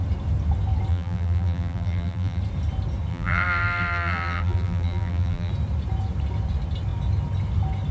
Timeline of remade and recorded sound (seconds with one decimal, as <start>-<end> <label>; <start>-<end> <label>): 0.0-0.9 recorded; 0.9-2.4 remade; 2.4-3.1 recorded; 3.1-5.5 remade; 5.5-7.9 recorded